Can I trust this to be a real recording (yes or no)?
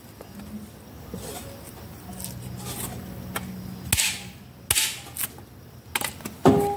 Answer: yes